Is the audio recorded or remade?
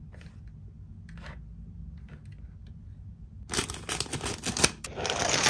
recorded